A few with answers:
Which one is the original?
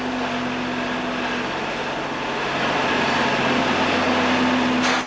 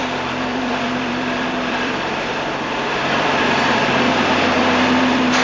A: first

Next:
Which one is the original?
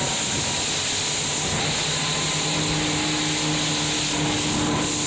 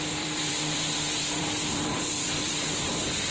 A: first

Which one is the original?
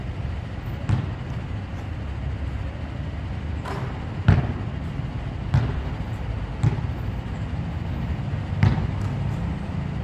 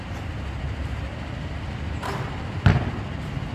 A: first